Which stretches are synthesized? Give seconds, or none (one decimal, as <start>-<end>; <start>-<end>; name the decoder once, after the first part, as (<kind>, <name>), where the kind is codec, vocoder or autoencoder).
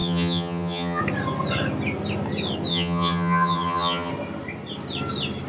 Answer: 0.0-1.0 (vocoder, HiFi-GAN); 2.7-4.1